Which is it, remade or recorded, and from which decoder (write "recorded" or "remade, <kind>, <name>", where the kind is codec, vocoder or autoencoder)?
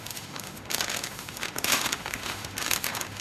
remade, autoencoder, DAC-VAE